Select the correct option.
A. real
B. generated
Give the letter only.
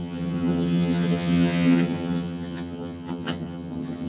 B